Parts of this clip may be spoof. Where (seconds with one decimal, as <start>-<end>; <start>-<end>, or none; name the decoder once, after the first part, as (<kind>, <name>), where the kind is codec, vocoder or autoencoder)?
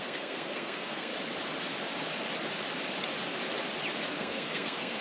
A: 0.0-1.1 (codec, SNAC); 4.1-5.0